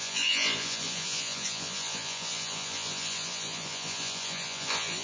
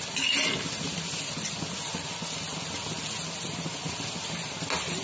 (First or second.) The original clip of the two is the second